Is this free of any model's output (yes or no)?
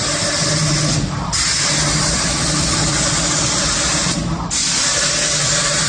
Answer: yes